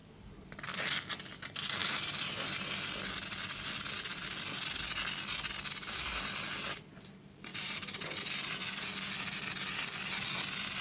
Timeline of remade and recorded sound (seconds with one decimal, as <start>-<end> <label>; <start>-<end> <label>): 0.0-1.0 remade; 1.0-1.8 recorded; 1.8-2.3 remade; 2.3-7.5 recorded; 7.5-8.5 remade; 8.5-10.8 recorded